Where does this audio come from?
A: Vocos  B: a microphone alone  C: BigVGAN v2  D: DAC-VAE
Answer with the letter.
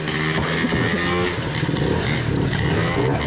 B